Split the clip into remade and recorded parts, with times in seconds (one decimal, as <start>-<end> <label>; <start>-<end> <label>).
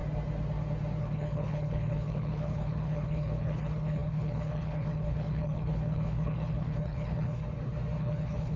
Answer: 0.0-1.0 recorded; 1.0-7.4 remade; 7.4-8.0 recorded; 8.0-8.6 remade